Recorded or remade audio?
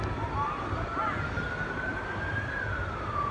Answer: recorded